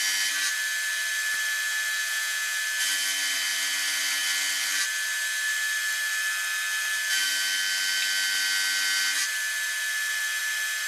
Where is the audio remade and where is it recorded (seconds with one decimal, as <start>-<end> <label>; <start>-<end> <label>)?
0.0-2.0 recorded; 2.0-2.6 remade; 2.6-10.9 recorded